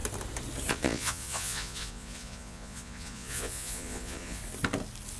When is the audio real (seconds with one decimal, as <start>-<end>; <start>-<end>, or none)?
0.0-0.7; 4.4-5.2